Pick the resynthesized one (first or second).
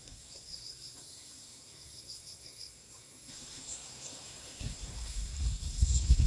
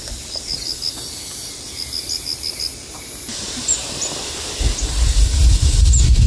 first